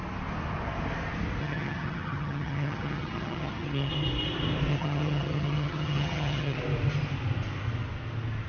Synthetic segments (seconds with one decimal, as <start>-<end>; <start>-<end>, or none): 1.4-3.9; 4.7-6.6